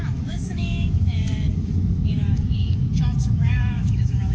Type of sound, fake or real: fake